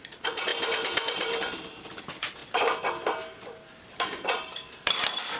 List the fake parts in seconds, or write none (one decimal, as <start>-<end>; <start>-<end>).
none